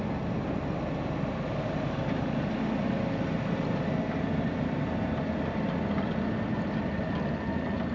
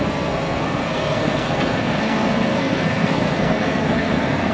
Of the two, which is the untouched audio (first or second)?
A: first